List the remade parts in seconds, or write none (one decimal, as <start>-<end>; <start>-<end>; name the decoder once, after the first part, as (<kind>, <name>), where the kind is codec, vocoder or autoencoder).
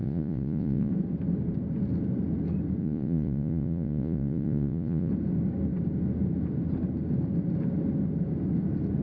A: 0.0-0.9 (vocoder, Vocos); 2.8-5.1